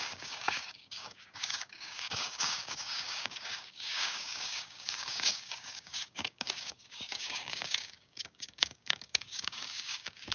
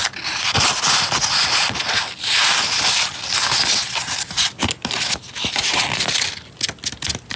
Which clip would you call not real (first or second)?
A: first